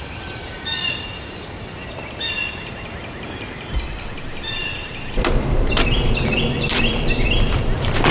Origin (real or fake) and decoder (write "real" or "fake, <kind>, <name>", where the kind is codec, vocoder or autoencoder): real